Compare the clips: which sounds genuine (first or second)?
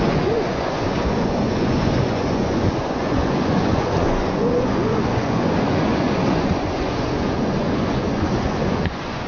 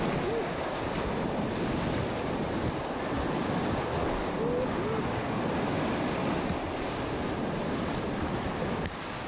second